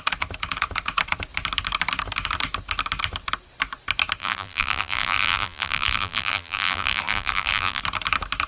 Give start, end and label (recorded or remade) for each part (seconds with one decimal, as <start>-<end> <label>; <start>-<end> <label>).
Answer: 0.0-4.2 recorded; 4.2-7.8 remade; 7.8-8.5 recorded